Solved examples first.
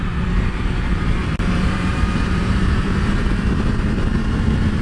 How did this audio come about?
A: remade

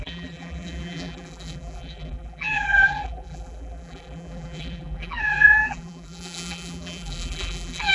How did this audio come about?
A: remade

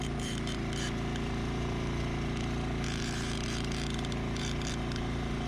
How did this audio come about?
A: remade